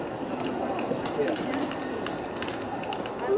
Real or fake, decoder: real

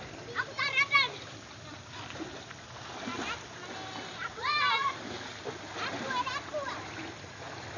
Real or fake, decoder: real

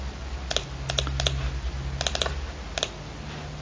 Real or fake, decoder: real